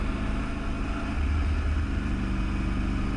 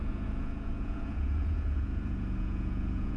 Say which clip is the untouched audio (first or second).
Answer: first